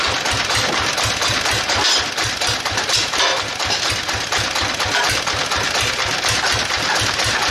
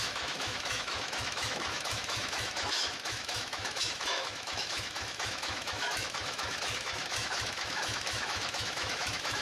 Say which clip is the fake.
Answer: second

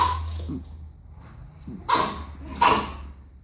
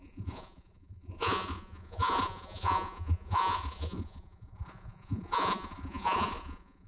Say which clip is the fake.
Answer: second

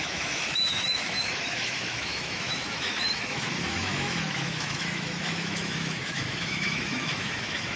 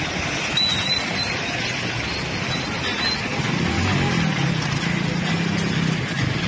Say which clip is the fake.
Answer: first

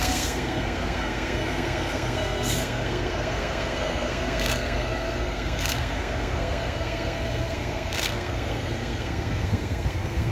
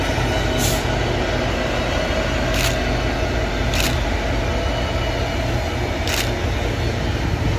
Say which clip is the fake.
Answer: first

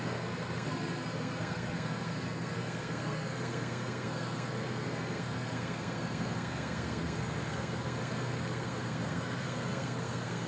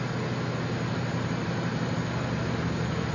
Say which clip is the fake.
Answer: first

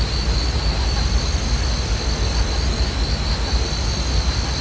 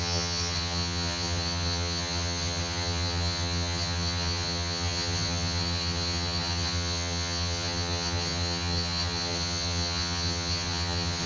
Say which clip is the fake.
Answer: second